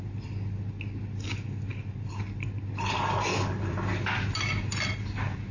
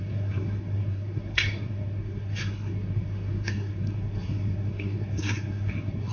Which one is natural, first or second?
first